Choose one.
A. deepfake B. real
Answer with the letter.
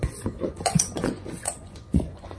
A